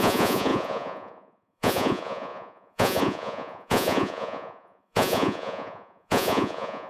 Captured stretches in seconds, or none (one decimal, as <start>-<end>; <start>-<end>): none